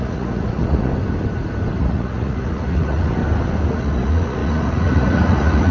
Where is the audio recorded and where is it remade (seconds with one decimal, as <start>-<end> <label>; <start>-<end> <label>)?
0.0-0.9 remade; 0.9-1.8 recorded; 1.8-3.2 remade; 3.2-3.7 recorded; 3.7-5.7 remade